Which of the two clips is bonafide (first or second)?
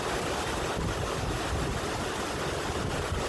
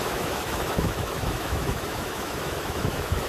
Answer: first